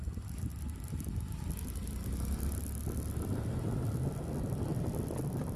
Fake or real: real